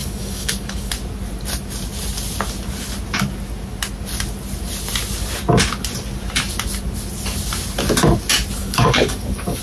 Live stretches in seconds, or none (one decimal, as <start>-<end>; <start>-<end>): 0.9-8.6